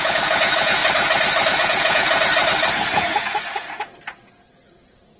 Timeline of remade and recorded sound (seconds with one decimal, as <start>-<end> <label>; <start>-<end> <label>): 0.0-0.8 remade; 0.8-1.6 recorded; 1.6-2.4 remade; 2.4-2.9 recorded; 2.9-5.2 remade